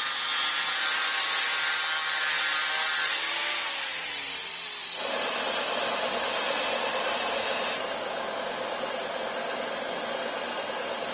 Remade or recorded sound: recorded